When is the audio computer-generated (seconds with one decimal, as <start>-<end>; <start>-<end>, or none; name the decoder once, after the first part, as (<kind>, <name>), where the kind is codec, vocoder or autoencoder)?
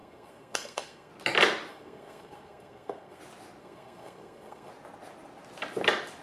0.0-1.1 (codec, SNAC); 1.7-3.2; 3.6-4.7